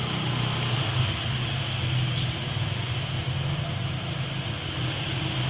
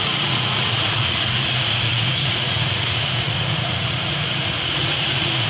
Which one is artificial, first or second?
second